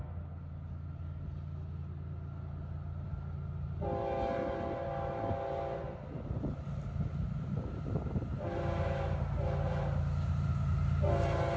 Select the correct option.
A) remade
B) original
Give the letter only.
B